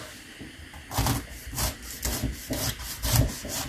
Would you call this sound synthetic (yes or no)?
no